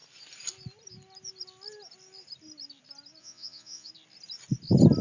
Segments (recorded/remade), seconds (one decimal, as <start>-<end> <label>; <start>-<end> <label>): 0.0-3.2 recorded; 3.2-3.9 remade; 3.9-5.0 recorded